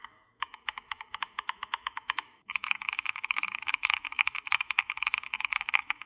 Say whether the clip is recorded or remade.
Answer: remade